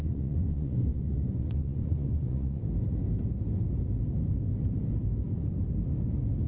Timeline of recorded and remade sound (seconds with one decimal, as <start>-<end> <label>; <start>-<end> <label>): 0.0-2.6 remade; 2.6-6.5 recorded